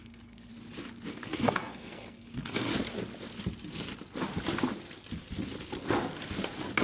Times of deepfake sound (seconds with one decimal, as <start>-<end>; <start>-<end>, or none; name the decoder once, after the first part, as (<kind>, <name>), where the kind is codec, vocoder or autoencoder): 0.0-0.5 (codec, SNAC); 1.1-2.7